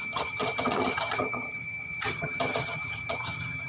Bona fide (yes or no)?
no